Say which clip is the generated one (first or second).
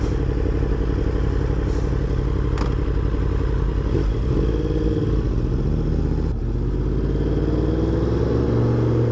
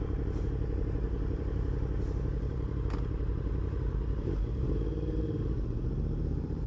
second